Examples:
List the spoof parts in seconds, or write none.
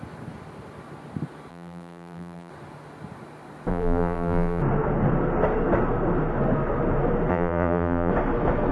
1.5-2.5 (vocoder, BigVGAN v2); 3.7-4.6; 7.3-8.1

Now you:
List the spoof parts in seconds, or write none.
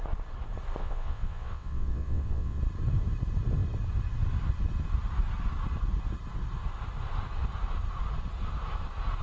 0.8-2.6 (vocoder, WaveNeXt)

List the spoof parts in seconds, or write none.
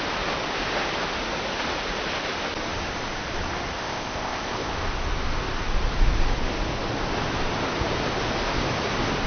3.8-4.7 (codec, ZipCodec)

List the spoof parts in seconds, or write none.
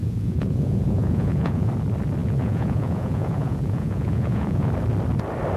0.0-1.7 (vocoder, Vocos); 2.2-4.7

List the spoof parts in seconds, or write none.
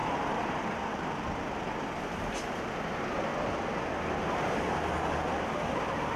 0.0-1.8 (vocoder, BigVGAN v2)